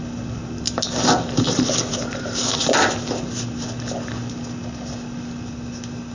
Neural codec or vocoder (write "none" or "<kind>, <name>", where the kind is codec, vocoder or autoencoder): none